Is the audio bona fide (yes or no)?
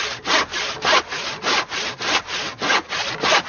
yes